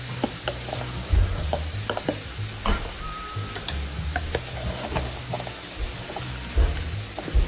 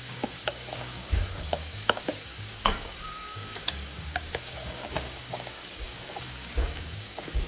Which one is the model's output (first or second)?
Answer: second